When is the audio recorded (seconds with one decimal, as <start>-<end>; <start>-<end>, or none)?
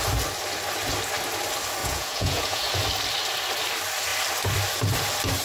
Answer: 0.0-1.8; 2.7-5.4